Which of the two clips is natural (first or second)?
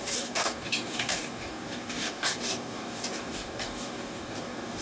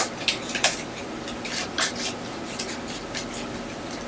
second